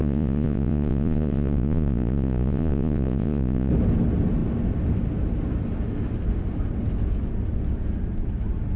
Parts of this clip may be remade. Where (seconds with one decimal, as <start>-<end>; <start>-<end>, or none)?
0.0-3.7